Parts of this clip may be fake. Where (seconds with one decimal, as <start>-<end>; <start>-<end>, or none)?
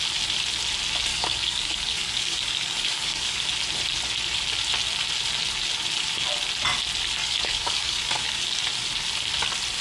1.1-3.4; 7.2-8.4